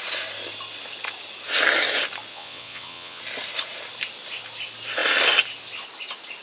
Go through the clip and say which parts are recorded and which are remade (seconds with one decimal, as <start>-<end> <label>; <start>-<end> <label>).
0.0-2.3 recorded; 2.3-3.2 remade; 3.2-6.4 recorded